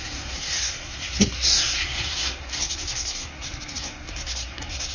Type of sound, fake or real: fake